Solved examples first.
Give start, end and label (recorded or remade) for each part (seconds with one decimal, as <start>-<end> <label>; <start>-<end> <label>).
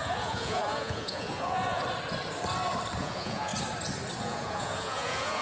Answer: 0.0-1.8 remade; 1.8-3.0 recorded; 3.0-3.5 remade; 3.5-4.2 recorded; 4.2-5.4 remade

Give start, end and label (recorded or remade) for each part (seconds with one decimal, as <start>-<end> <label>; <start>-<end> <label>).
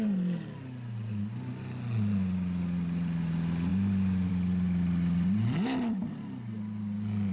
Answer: 0.0-7.3 recorded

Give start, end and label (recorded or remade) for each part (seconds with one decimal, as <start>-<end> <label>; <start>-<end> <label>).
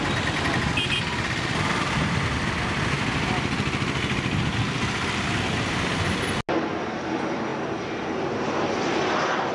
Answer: 0.0-9.5 recorded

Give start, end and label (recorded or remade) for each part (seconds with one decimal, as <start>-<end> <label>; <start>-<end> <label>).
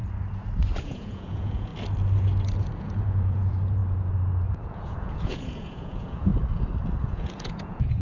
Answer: 0.0-0.8 recorded; 0.8-1.7 remade; 1.7-2.7 recorded; 2.7-3.8 remade; 3.8-4.5 recorded; 4.5-6.3 remade; 6.3-7.0 recorded; 7.0-8.0 remade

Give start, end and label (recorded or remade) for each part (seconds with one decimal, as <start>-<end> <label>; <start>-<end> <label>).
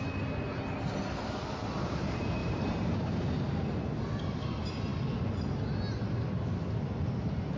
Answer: 0.0-2.4 recorded; 2.4-3.4 remade; 3.4-7.6 recorded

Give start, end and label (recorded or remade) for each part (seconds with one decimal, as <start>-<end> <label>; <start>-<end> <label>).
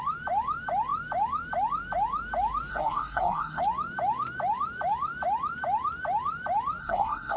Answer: 0.0-2.7 recorded; 2.7-3.6 remade; 3.6-6.8 recorded; 6.8-7.4 remade